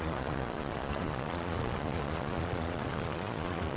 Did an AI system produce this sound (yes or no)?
yes